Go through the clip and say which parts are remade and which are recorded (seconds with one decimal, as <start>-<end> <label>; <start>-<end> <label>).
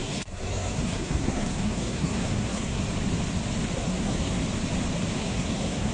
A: 0.0-2.8 remade; 2.8-3.9 recorded; 3.9-4.4 remade; 4.4-5.2 recorded; 5.2-5.9 remade